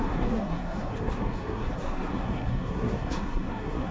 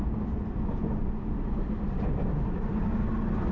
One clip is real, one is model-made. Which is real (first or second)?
second